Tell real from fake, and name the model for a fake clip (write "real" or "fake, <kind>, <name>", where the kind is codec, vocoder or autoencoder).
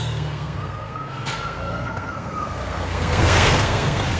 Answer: fake, codec, SNAC